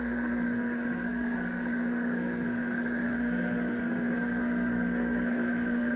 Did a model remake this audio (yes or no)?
yes